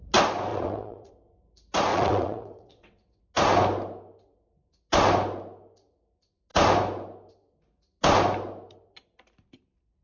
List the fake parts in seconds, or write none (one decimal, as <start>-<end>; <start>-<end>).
0.5-1.1; 1.9-3.2